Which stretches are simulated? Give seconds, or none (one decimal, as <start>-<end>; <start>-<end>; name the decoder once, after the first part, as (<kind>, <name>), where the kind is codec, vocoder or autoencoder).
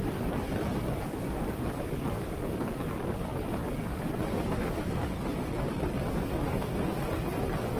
none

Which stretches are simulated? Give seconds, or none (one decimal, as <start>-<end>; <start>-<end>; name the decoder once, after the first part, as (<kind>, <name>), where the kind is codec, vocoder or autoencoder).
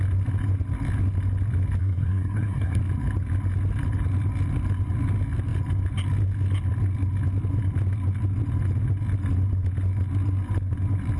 1.8-2.8 (codec, SNAC)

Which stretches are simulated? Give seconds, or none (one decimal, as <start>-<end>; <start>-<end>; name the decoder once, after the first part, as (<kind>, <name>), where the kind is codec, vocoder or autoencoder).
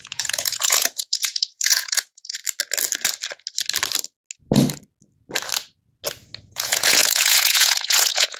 0.0-2.4 (vocoder, Vocos); 6.5-8.4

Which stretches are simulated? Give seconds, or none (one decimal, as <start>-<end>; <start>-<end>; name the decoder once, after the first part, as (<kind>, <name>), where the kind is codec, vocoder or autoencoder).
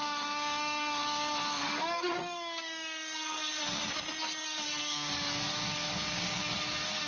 0.0-1.0 (codec, DAC); 1.6-3.5; 4.2-7.1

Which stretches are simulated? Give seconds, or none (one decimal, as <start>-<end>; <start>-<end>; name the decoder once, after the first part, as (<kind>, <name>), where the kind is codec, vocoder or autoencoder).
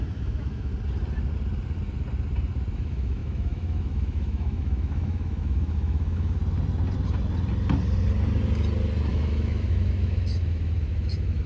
0.0-0.7 (autoencoder, DAC-VAE); 2.7-6.4; 9.1-11.5